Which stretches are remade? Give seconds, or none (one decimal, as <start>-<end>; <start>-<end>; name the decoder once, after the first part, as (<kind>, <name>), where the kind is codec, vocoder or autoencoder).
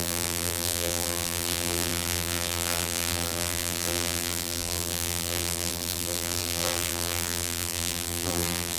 0.0-8.8 (vocoder, BigVGAN v2)